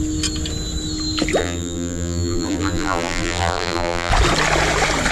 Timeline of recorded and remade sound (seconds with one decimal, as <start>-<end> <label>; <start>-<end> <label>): 0.0-1.4 recorded; 1.4-4.1 remade; 4.1-5.1 recorded